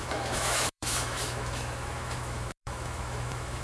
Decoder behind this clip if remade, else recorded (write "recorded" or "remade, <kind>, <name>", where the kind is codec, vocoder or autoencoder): remade, autoencoder, DAC-VAE